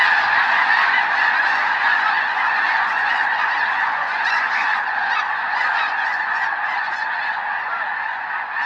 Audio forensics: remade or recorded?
remade